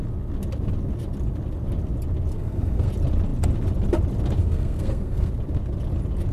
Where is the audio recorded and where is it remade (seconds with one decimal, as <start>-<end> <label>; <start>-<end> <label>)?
0.0-2.3 recorded; 2.3-2.9 remade; 2.9-4.4 recorded; 4.4-5.3 remade; 5.3-6.3 recorded